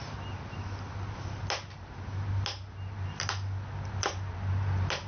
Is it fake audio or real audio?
real